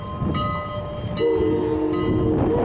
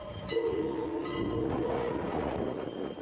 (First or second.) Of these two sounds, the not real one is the second